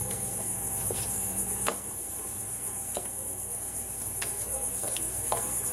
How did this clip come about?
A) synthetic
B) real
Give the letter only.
A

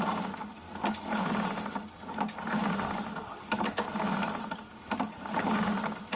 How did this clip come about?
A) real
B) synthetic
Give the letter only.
A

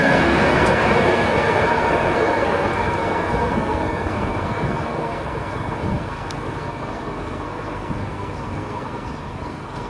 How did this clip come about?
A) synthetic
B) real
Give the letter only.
A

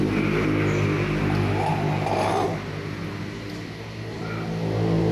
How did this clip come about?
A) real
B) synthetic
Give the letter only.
A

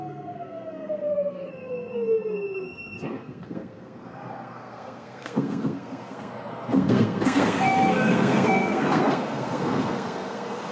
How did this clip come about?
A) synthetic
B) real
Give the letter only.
A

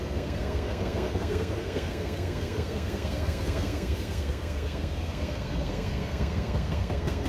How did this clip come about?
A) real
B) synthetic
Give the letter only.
B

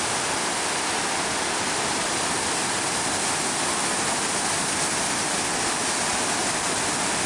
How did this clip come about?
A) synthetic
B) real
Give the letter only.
B